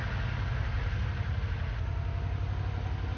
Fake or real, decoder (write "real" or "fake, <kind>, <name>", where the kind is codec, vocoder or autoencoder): real